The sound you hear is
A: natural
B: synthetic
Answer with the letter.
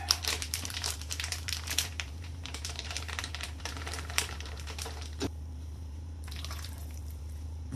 B